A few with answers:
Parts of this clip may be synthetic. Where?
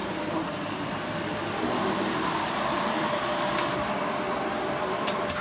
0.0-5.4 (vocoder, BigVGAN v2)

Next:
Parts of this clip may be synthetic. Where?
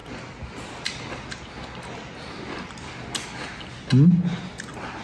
none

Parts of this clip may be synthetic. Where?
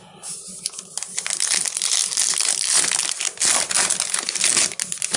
none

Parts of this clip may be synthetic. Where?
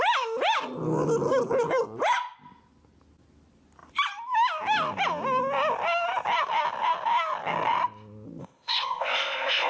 8.4-9.7 (codec, ZipCodec)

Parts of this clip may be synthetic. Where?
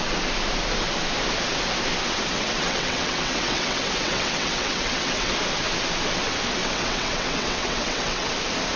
2.3-5.3 (vocoder, WaveNeXt); 6.6-8.3